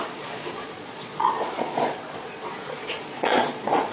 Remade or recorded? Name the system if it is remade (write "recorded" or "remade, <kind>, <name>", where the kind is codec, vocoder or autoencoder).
remade, vocoder, Vocos